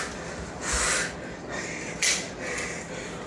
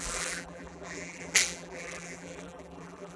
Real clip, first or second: first